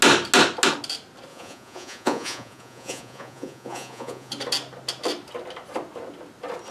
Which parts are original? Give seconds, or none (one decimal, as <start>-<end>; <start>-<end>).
0.0-1.3; 4.3-6.7